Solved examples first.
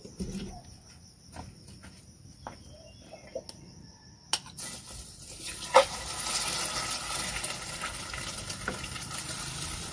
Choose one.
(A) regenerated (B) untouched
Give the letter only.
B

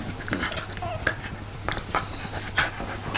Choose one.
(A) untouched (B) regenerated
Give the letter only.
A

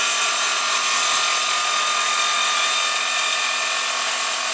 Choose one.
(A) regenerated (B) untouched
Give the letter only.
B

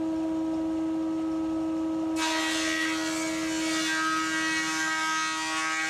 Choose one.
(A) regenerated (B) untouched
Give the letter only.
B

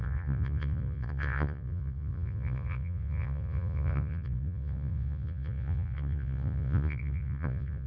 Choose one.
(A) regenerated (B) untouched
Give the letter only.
A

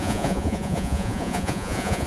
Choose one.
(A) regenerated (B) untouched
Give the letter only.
A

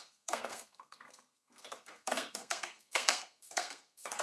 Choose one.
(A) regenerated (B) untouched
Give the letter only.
A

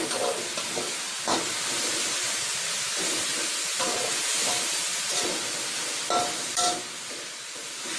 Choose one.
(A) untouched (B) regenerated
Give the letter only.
A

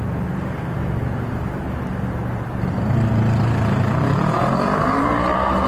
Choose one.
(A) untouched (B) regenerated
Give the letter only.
B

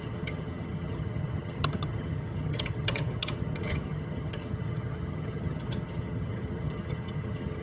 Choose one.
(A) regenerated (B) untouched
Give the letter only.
A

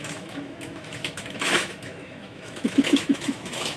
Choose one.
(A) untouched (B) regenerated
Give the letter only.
B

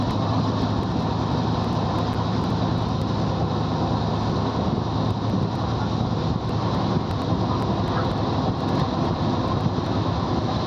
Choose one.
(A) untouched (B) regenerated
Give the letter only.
A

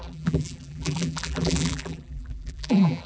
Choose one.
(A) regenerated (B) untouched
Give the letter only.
A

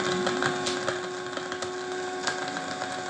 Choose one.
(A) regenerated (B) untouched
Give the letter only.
B